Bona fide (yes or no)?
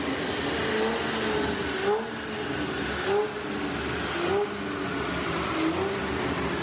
yes